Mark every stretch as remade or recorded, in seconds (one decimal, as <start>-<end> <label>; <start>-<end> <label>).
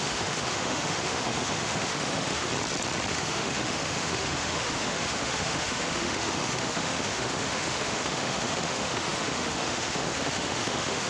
0.0-2.5 remade; 2.5-3.1 recorded; 3.1-11.1 remade